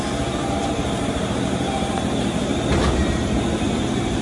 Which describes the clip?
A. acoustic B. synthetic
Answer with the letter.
B